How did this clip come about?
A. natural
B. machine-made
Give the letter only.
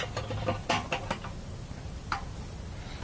A